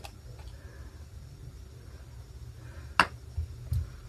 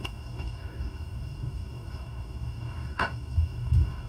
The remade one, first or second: second